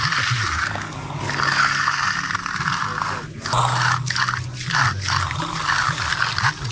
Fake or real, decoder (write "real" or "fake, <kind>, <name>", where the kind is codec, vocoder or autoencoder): real